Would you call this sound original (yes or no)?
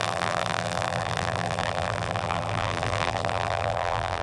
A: no